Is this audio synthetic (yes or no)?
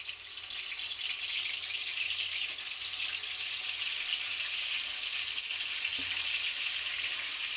no